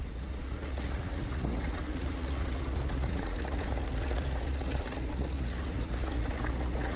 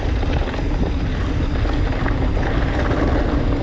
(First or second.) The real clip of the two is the second